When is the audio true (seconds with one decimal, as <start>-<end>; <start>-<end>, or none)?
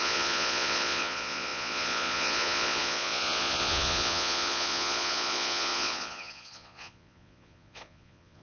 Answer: none